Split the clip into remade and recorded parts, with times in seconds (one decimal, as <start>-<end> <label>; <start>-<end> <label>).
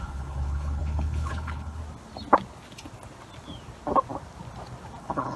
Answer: 0.0-1.8 remade; 1.8-5.0 recorded; 5.0-5.4 remade